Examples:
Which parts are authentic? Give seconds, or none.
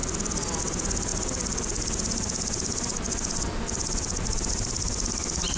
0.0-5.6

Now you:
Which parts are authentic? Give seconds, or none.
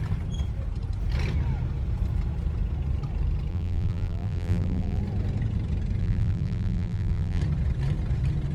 0.0-3.5; 5.0-6.0; 7.4-8.5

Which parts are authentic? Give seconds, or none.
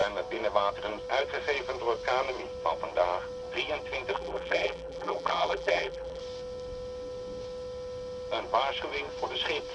0.0-4.1; 6.2-9.7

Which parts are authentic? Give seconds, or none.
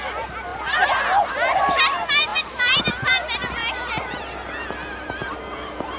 0.0-2.3; 2.9-3.6; 4.2-6.0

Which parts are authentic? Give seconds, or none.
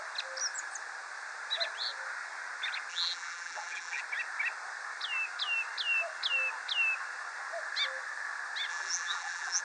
0.0-2.9; 4.0-8.7